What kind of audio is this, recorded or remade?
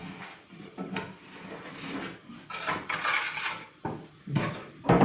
recorded